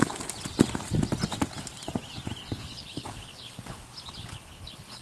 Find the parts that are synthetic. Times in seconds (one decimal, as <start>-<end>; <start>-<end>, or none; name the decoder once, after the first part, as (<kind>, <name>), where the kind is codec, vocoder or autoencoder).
2.4-3.8 (codec, HILCodec); 4.2-5.0